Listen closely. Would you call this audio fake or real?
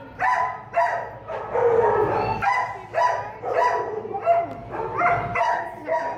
real